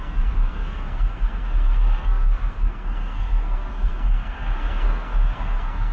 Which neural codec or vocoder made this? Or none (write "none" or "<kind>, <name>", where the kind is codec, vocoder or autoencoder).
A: codec, SNAC